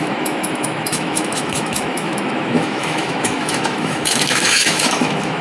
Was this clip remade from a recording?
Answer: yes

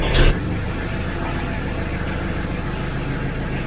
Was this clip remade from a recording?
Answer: no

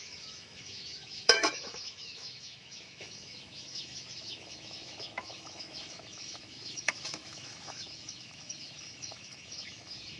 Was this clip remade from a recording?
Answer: yes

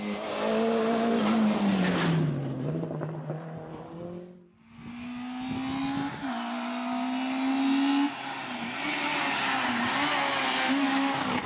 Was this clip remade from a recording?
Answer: no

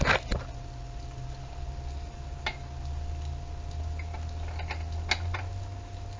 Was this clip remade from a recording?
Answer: no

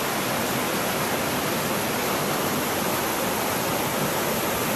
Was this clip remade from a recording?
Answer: no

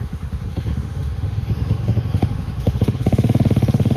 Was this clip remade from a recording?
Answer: yes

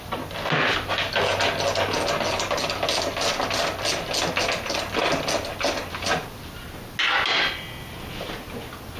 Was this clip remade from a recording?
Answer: no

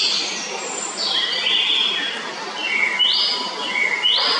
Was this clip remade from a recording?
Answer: no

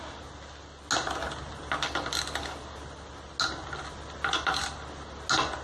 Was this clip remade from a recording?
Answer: no